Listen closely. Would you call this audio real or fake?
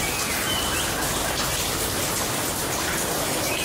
real